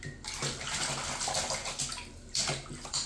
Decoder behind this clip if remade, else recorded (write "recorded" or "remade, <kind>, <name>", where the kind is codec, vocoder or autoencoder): recorded